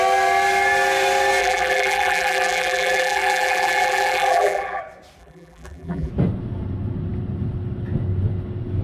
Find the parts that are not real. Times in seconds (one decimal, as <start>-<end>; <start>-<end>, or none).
1.4-4.8; 5.2-6.1